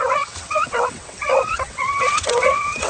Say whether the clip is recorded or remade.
remade